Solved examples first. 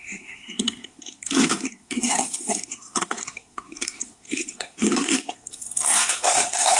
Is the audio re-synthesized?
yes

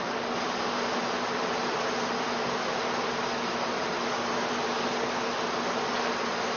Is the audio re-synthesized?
no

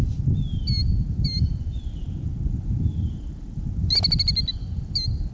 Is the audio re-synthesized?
no